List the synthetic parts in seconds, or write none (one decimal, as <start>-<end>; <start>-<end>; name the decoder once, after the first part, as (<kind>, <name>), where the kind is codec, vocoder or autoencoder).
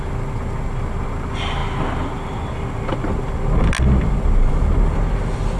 none